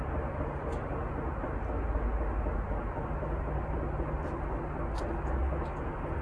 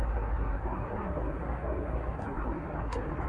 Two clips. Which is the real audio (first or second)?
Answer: first